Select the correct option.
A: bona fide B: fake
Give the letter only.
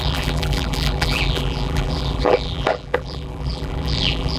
B